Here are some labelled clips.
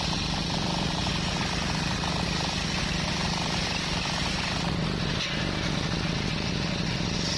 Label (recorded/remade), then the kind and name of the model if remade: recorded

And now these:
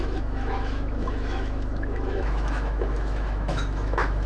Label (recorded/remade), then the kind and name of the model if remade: remade, autoencoder, DAC-VAE